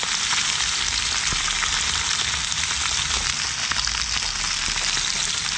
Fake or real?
real